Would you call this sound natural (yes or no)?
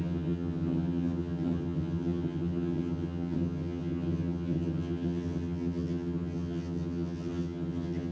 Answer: no